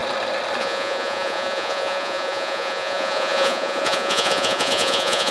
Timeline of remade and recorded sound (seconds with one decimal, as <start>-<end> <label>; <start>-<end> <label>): 0.0-0.6 recorded; 0.6-5.3 remade